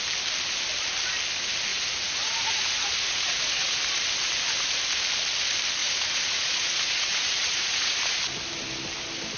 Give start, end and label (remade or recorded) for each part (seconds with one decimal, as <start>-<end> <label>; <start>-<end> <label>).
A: 0.0-1.7 recorded; 1.7-3.8 remade; 3.8-5.8 recorded; 5.8-8.0 remade; 8.0-9.4 recorded